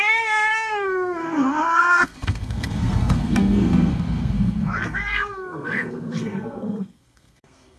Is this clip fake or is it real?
fake